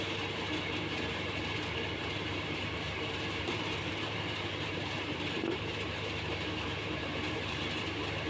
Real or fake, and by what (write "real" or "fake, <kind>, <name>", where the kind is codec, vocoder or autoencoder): fake, vocoder, BigVGAN v2